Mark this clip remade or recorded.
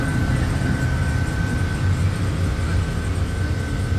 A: recorded